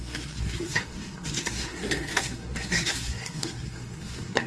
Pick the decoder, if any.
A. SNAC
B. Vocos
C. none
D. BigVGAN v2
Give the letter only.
A